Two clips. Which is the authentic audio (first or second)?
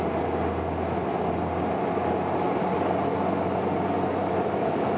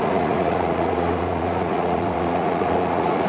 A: first